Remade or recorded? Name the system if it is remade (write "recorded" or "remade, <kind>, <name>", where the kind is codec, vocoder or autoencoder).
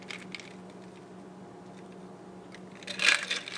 recorded